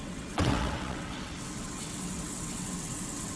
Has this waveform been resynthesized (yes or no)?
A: yes